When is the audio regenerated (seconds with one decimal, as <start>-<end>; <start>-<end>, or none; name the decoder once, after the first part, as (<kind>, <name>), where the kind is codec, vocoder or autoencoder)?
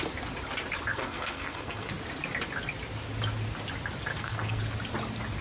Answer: 0.9-1.9 (codec, SNAC); 4.1-4.6